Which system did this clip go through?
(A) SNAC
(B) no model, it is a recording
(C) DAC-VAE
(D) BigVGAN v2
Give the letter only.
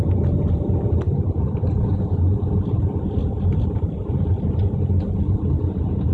B